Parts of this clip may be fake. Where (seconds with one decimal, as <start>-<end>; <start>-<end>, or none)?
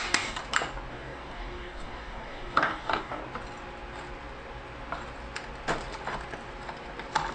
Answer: 0.0-0.4; 0.9-3.2